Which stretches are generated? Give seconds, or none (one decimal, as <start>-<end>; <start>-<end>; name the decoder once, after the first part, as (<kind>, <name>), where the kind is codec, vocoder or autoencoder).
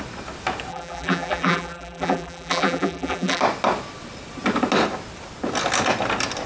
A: 0.7-3.4 (vocoder, BigVGAN v2)